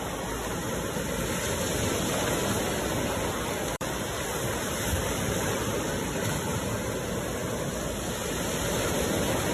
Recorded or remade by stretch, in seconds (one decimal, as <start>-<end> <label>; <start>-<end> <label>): 0.0-3.6 recorded; 3.6-6.4 remade; 6.4-9.5 recorded